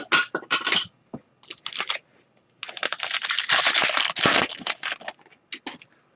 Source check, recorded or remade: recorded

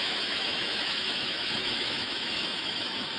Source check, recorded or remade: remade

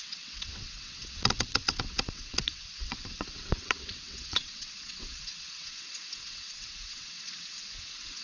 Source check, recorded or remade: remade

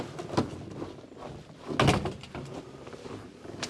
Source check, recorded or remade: recorded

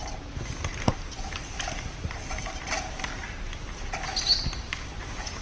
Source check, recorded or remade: recorded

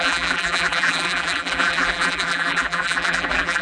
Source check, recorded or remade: remade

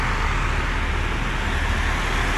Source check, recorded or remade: recorded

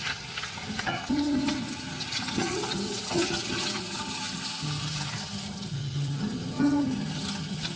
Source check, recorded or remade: remade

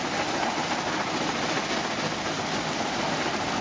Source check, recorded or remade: recorded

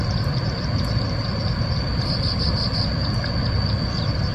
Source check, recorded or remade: recorded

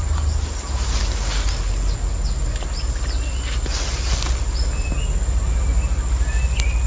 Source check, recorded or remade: recorded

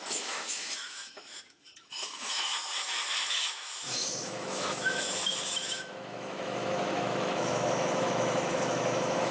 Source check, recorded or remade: remade